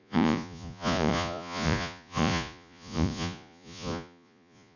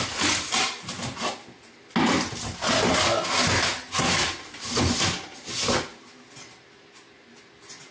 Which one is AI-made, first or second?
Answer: first